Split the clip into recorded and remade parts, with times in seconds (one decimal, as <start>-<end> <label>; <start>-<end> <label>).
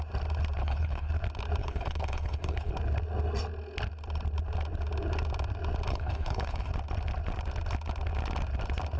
0.0-0.6 recorded; 0.6-1.1 remade; 1.1-1.6 recorded; 1.6-2.7 remade; 2.7-5.9 recorded; 5.9-6.7 remade; 6.7-9.0 recorded